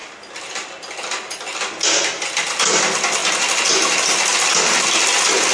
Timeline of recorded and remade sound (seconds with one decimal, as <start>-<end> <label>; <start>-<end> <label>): 0.0-5.5 recorded